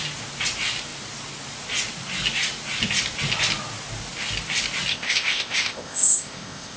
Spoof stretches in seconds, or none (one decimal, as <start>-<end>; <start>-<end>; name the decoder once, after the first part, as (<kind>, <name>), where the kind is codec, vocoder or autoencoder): 4.9-6.8 (codec, ZipCodec)